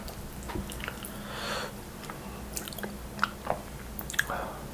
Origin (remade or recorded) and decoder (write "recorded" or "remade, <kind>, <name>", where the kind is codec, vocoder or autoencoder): recorded